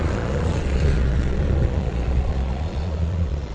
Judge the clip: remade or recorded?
remade